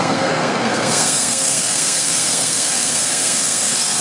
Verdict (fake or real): fake